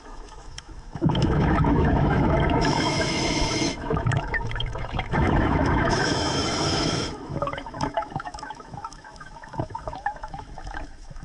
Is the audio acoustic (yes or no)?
no